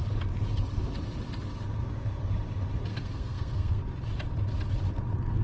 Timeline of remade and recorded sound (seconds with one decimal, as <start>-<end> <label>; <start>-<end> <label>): 0.0-2.9 recorded; 2.9-3.8 remade; 3.8-5.4 recorded